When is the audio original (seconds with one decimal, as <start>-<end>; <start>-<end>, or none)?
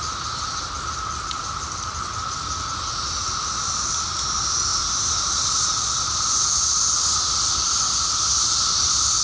0.0-9.2